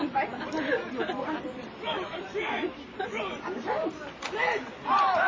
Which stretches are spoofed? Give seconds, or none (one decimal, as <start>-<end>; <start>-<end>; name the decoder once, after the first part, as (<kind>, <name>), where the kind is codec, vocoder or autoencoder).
1.0-4.2 (vocoder, BigVGAN v2)